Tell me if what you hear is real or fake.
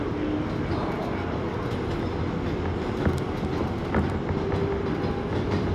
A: real